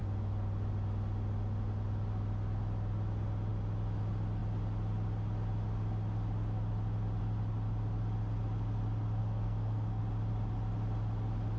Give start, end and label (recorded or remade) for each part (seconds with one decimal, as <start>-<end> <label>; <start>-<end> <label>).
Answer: 0.0-9.2 recorded; 9.2-10.0 remade; 10.0-11.6 recorded